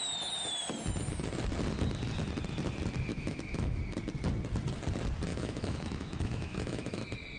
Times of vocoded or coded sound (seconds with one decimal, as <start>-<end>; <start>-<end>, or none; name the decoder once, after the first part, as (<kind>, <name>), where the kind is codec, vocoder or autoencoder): 3.1-3.8 (autoencoder, DAC-VAE); 5.3-7.0